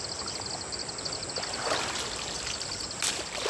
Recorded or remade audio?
recorded